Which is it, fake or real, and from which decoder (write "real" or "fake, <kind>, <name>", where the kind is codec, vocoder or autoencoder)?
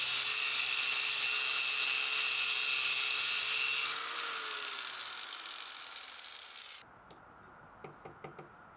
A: real